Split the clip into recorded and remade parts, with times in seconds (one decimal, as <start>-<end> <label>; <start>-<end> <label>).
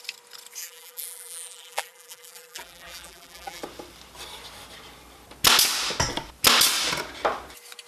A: 0.0-0.6 recorded; 0.6-3.6 remade; 3.6-7.9 recorded